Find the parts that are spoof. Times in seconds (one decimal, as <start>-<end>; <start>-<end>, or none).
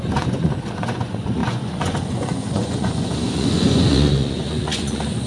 0.0-5.3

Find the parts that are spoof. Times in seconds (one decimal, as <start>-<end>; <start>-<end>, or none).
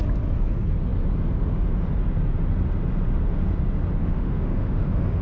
4.0-5.2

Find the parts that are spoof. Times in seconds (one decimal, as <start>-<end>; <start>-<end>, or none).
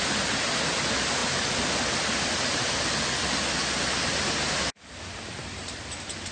none